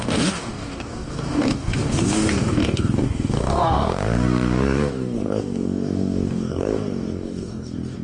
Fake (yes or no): yes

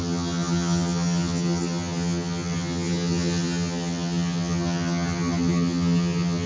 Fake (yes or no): yes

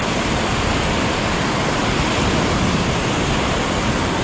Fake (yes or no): no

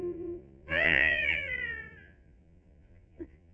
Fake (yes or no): yes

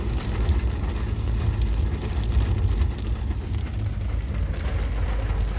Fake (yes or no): no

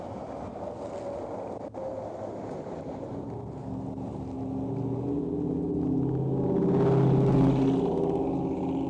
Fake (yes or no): no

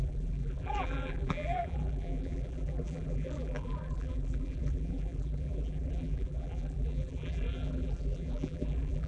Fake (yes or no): yes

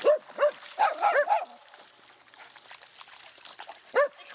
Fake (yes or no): no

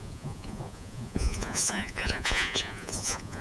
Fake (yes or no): yes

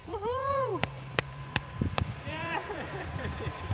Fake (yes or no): yes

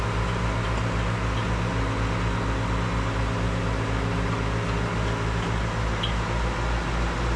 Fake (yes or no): no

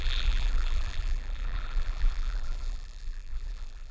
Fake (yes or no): yes